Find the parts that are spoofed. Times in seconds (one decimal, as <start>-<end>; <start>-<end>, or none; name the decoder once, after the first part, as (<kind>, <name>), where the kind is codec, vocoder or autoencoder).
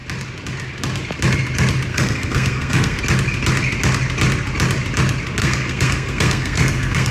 1.9-3.0 (codec, SNAC); 5.4-7.1